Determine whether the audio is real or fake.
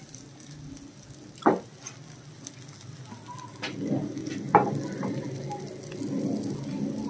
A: real